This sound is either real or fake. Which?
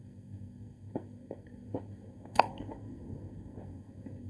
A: fake